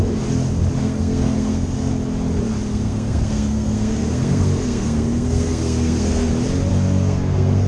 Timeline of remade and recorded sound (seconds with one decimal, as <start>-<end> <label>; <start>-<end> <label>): 0.0-0.8 recorded; 0.8-1.9 remade; 1.9-2.7 recorded; 2.7-6.3 remade; 6.3-6.7 recorded; 6.7-7.7 remade